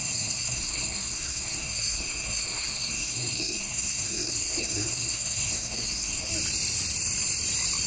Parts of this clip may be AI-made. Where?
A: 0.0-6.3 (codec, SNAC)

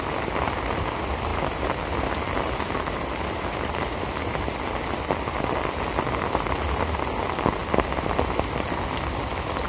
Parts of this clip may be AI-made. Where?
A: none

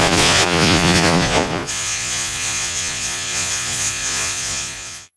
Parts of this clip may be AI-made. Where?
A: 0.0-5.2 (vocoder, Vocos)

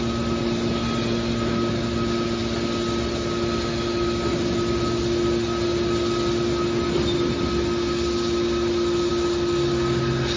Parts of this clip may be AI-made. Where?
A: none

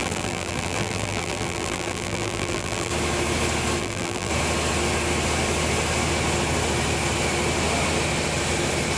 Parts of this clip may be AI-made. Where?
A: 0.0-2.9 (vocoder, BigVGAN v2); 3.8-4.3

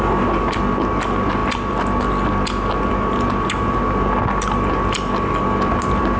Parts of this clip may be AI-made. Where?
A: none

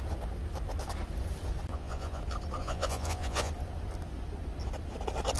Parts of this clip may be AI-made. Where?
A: 1.7-2.2 (vocoder, Vocos); 2.6-3.5

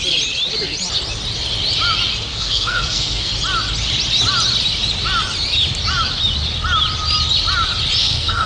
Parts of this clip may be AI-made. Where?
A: 2.3-3.3 (codec, SNAC); 8.0-8.5